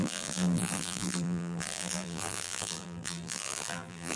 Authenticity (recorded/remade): remade